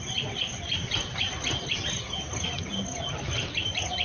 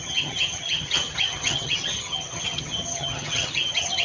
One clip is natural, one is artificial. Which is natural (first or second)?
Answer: first